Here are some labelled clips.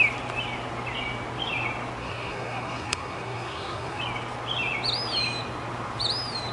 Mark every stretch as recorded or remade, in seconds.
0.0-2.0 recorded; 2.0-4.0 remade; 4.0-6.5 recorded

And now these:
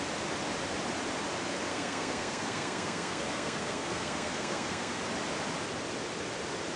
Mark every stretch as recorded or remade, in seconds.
0.0-1.7 recorded; 1.7-5.0 remade; 5.0-6.8 recorded

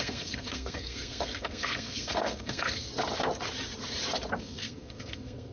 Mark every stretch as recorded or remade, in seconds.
0.0-2.9 remade; 2.9-4.4 recorded; 4.4-5.5 remade

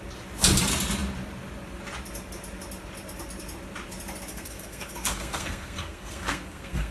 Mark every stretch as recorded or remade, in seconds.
0.0-4.3 recorded; 4.3-6.9 remade

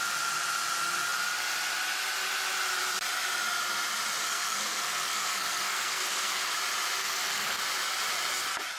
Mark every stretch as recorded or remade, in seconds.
0.0-4.2 recorded; 4.2-6.5 remade; 6.5-7.0 recorded; 7.0-7.6 remade; 7.6-8.8 recorded

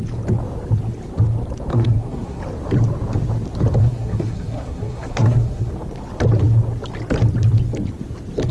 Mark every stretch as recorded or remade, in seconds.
0.0-1.7 recorded; 1.7-2.4 remade; 2.4-3.8 recorded; 3.8-5.7 remade; 5.7-8.5 recorded

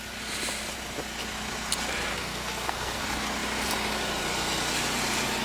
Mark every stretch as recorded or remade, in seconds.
0.0-2.1 recorded; 2.1-3.0 remade; 3.0-5.4 recorded

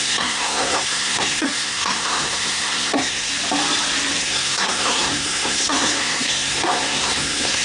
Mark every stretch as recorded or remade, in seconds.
0.0-3.3 remade; 3.3-4.2 recorded; 4.2-7.6 remade